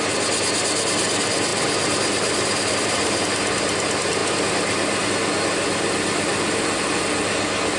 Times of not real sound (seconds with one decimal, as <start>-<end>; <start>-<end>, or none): 1.5-3.2

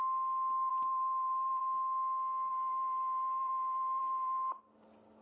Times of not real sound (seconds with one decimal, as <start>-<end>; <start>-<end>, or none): 0.7-1.6; 2.5-4.6

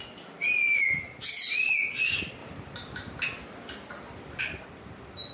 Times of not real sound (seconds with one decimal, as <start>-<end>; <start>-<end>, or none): none